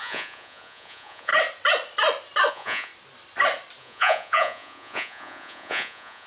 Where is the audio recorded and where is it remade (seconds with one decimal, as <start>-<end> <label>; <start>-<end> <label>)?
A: 0.0-1.3 remade; 1.3-2.5 recorded; 2.5-2.9 remade; 2.9-3.8 recorded; 3.8-6.3 remade